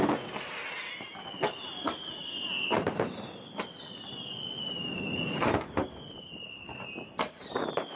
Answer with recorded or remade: recorded